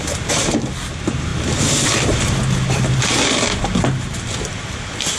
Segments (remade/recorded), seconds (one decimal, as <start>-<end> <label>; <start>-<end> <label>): 0.0-5.2 recorded